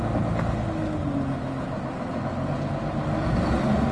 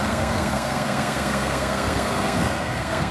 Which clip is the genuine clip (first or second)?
first